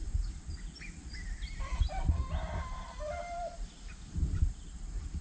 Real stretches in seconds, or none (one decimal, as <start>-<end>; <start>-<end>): 0.0-5.2